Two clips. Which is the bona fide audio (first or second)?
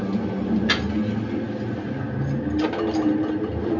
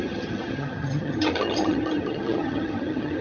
first